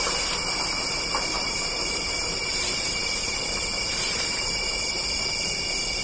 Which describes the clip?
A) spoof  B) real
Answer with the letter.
A